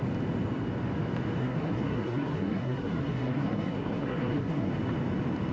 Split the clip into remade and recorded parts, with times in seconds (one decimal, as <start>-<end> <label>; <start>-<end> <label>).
0.0-1.4 recorded; 1.4-4.7 remade; 4.7-5.5 recorded